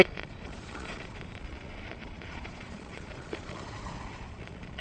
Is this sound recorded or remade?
remade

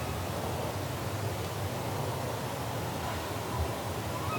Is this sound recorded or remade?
recorded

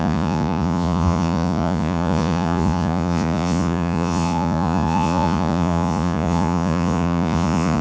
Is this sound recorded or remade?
remade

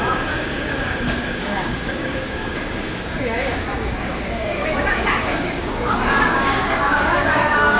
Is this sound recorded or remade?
remade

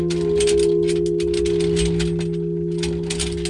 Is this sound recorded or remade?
recorded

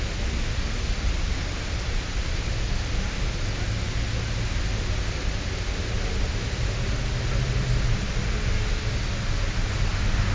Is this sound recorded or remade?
recorded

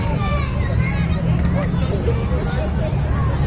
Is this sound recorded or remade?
recorded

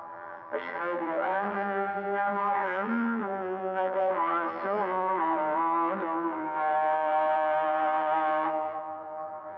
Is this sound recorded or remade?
remade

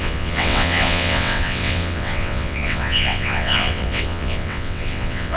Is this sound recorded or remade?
remade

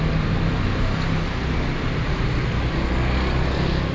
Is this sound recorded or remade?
recorded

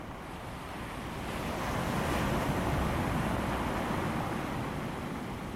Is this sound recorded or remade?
recorded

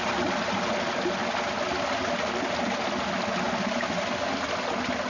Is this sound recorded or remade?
recorded